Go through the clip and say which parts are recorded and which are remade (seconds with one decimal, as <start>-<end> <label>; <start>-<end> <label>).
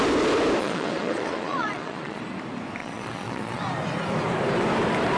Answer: 0.0-0.6 recorded; 0.6-2.2 remade; 2.2-2.8 recorded; 2.8-3.6 remade; 3.6-5.2 recorded